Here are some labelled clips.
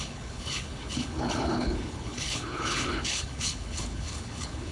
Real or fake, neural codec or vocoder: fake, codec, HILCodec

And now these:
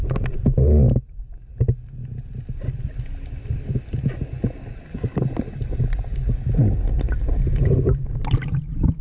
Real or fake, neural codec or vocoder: real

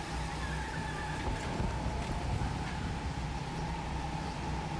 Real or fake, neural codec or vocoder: real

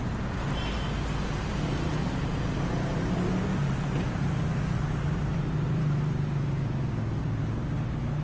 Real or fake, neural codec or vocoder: real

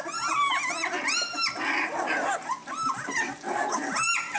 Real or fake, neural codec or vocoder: real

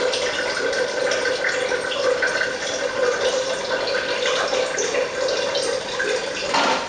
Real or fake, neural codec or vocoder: real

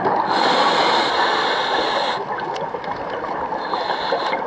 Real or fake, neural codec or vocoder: real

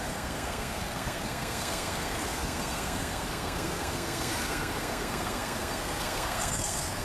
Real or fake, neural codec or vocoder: fake, codec, SNAC